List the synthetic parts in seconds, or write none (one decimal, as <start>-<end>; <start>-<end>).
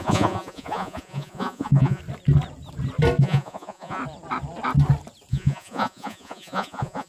0.0-2.0; 3.2-4.0; 5.3-7.1